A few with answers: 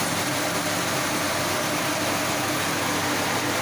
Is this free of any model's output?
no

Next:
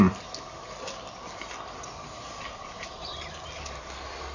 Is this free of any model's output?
yes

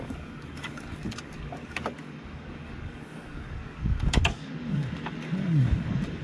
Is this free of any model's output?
no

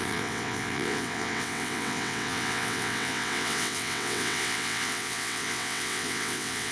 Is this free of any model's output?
no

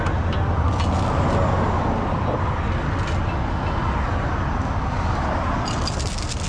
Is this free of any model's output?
yes